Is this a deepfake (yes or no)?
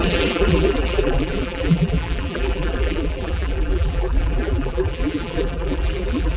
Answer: yes